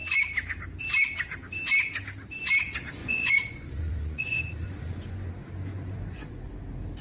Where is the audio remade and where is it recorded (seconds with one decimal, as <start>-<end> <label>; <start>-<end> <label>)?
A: 0.0-3.0 recorded; 3.0-5.3 remade; 5.3-5.7 recorded; 5.7-6.5 remade; 6.5-7.0 recorded